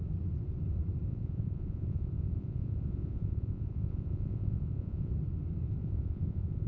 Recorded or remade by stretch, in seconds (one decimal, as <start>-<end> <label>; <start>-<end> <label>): 0.0-1.1 recorded; 1.1-5.1 remade; 5.1-5.8 recorded; 5.8-6.7 remade